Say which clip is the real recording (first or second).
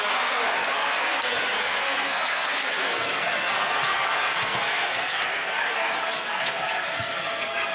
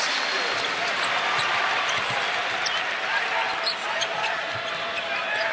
second